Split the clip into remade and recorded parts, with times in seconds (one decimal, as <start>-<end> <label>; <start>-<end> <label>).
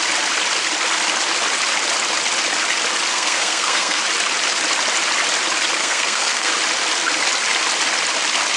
0.0-3.1 recorded; 3.1-4.0 remade; 4.0-5.8 recorded; 5.8-6.5 remade; 6.5-8.6 recorded